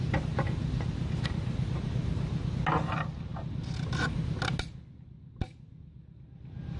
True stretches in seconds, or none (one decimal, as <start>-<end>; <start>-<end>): 0.0-6.8